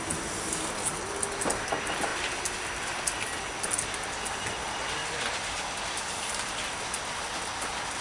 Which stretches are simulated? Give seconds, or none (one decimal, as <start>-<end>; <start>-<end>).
none